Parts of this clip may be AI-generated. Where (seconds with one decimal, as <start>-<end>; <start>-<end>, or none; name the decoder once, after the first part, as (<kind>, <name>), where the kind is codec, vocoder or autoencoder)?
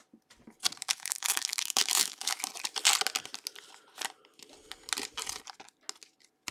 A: 0.8-2.4 (autoencoder, DAC-VAE)